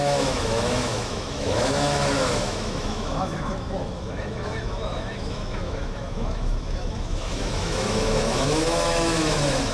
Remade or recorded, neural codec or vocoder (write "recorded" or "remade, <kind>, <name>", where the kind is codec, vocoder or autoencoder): remade, autoencoder, DAC-VAE